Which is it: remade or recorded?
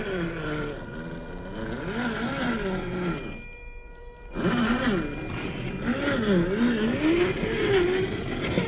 recorded